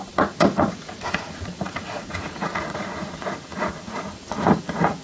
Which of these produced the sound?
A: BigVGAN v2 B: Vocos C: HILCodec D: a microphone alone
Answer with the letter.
B